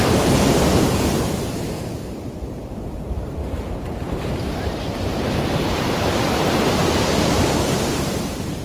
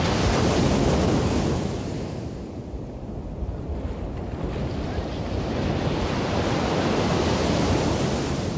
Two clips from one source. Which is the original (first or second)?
second